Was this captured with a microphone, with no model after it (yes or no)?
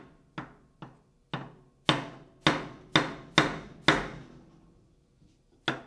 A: yes